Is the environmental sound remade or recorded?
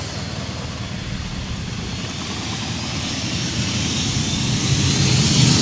recorded